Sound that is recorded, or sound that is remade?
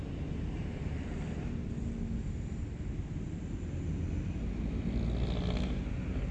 recorded